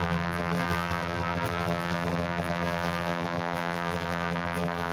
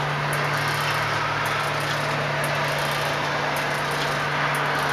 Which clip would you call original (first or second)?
second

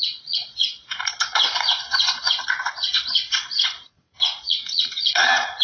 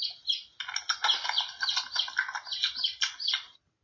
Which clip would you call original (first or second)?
second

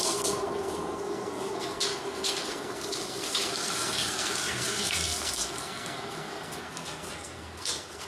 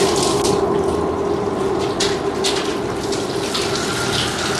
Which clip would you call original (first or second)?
second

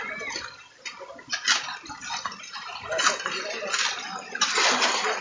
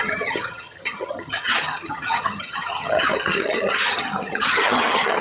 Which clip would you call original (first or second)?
first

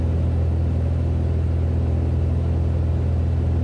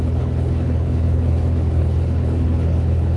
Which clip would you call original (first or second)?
first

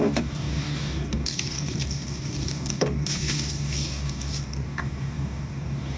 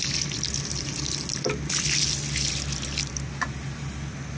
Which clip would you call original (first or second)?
second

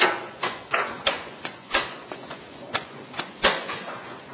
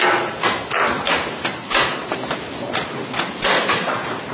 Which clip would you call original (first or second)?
second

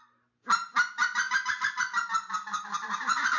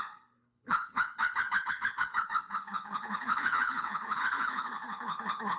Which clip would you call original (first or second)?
first